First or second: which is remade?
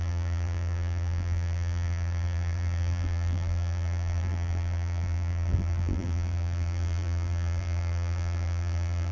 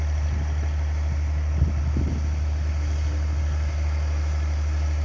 first